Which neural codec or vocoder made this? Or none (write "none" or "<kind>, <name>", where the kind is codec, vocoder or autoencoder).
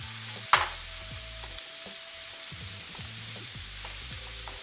none